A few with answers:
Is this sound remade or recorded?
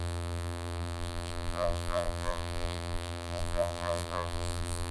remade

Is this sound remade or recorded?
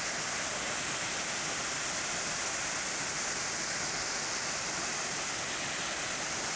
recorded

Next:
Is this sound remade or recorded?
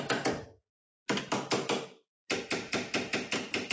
recorded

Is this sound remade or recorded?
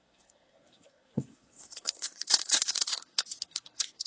remade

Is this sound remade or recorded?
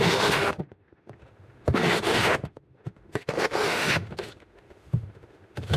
remade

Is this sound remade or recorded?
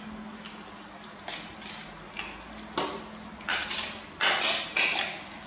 recorded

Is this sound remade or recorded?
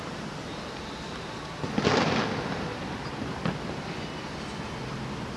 recorded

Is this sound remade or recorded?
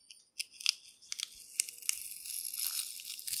recorded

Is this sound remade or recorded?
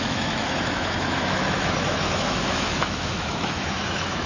remade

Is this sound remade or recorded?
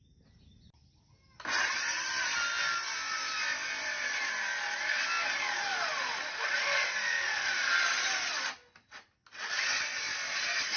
recorded